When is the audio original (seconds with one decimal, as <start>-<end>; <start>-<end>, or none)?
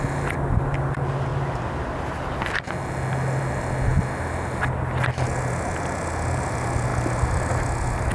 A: 0.0-8.1